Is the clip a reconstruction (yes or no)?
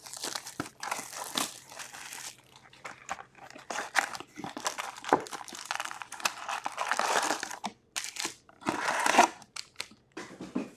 yes